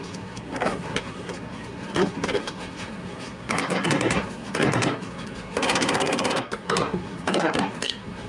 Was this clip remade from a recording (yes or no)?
yes